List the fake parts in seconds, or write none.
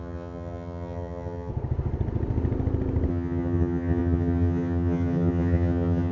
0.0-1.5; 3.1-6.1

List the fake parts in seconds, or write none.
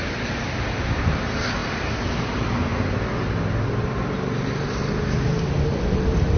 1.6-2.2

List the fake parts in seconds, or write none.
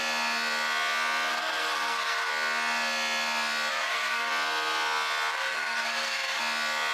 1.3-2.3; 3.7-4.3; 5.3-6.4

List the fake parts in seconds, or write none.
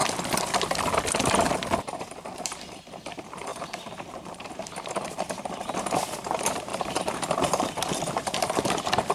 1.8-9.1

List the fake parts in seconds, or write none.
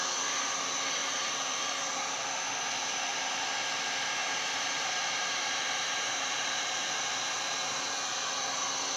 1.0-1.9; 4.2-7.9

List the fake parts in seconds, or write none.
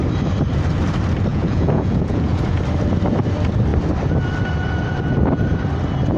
1.3-2.6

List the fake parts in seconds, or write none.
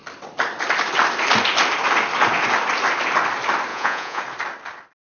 3.7-4.2